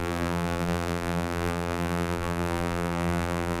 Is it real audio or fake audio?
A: fake